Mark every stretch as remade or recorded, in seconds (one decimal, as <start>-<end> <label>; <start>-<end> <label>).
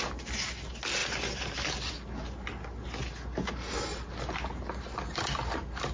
0.0-5.9 recorded